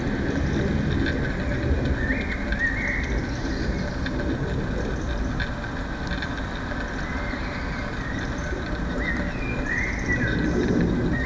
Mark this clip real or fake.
real